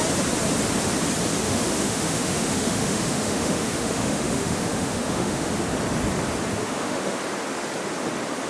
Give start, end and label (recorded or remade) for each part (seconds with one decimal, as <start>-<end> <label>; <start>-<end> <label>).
0.0-1.4 recorded; 1.4-5.6 remade; 5.6-6.5 recorded; 6.5-7.2 remade; 7.2-8.5 recorded